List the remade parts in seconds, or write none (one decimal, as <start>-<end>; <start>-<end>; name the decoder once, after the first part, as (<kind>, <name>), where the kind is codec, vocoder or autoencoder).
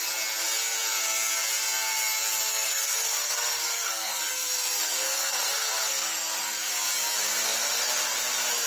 2.5-6.7 (codec, SNAC)